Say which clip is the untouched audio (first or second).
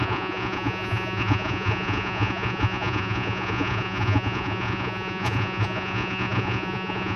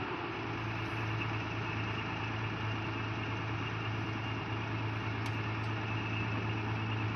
second